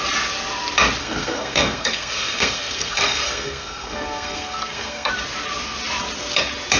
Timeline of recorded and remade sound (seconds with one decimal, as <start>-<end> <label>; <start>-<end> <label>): 0.0-1.0 recorded; 1.0-5.1 remade; 5.1-6.8 recorded